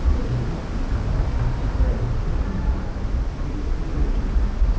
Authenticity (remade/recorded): recorded